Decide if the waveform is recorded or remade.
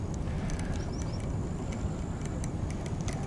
recorded